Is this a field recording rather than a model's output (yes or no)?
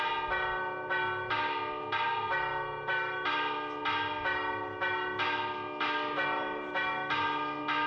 yes